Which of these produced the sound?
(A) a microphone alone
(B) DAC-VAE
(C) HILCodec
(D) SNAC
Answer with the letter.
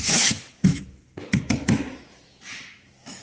B